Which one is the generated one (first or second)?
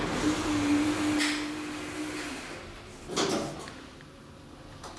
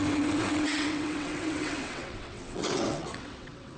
second